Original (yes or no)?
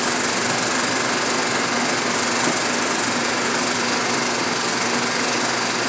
yes